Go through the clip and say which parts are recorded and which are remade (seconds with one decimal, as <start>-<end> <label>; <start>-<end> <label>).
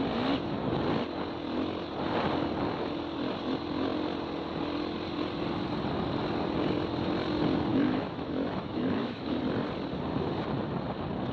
0.0-7.7 recorded; 7.7-9.4 remade; 9.4-11.3 recorded